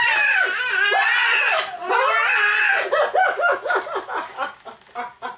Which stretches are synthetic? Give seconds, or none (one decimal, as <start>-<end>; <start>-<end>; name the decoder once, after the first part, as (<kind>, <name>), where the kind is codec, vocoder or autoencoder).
3.2-3.7 (autoencoder, DAC-VAE)